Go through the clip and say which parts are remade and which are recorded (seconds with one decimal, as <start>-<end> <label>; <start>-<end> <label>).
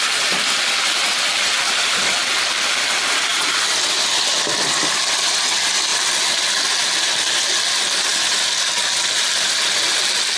0.0-10.4 recorded